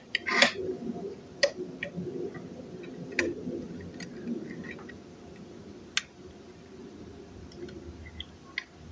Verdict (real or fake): real